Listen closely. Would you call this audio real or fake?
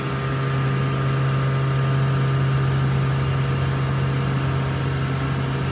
real